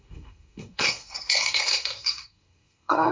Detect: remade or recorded remade